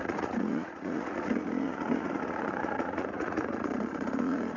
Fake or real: fake